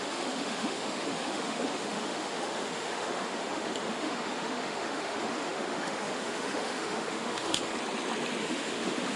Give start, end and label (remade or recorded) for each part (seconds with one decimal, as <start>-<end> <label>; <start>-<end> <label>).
0.0-7.7 remade; 7.7-8.4 recorded; 8.4-9.2 remade